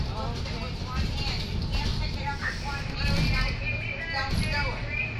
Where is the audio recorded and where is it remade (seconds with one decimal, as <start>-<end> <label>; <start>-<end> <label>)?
0.0-5.2 recorded